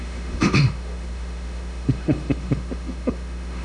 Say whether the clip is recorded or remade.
remade